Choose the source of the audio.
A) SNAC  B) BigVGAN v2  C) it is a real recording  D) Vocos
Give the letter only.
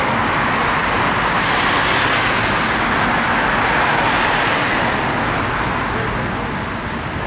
C